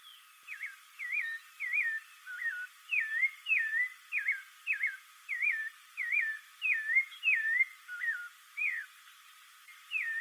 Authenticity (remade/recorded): recorded